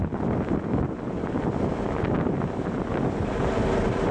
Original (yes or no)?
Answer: yes